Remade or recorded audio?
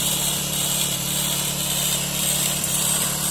remade